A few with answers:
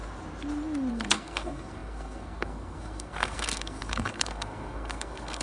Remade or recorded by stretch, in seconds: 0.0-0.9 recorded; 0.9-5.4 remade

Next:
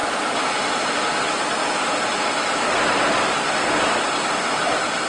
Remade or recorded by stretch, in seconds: 0.0-5.1 recorded

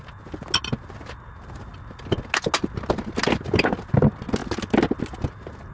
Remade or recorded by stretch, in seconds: 0.0-5.7 recorded

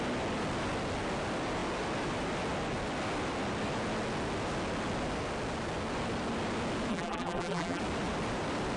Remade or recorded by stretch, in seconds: 0.0-6.9 recorded; 6.9-7.8 remade; 7.8-8.8 recorded